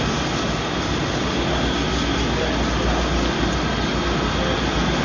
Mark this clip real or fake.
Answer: real